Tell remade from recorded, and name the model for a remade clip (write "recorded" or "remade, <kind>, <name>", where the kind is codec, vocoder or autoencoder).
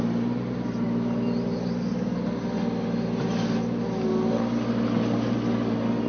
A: recorded